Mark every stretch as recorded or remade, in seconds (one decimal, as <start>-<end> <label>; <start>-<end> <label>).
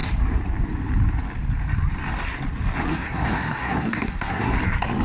0.0-2.9 recorded; 2.9-4.5 remade; 4.5-5.0 recorded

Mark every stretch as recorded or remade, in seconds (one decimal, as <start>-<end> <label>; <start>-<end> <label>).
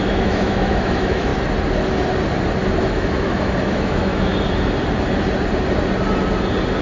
0.0-1.3 remade; 1.3-2.8 recorded; 2.8-4.3 remade; 4.3-6.8 recorded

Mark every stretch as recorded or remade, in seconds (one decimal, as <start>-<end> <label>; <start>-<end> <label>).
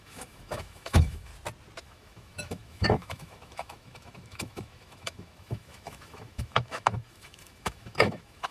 0.0-1.3 remade; 1.3-1.8 recorded; 1.8-8.5 remade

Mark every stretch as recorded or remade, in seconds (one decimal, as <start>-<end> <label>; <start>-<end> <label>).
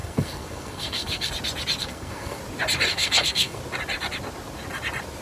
0.0-1.3 remade; 1.3-1.8 recorded; 1.8-2.4 remade; 2.4-2.9 recorded; 2.9-3.6 remade; 3.6-5.2 recorded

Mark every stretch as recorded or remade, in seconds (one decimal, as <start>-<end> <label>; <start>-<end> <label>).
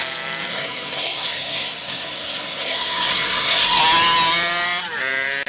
0.0-0.5 recorded; 0.5-3.8 remade; 3.8-5.5 recorded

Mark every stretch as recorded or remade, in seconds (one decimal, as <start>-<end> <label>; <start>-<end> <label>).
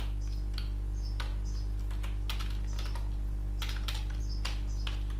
0.0-5.2 recorded